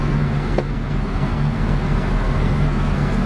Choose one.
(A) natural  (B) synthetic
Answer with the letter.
B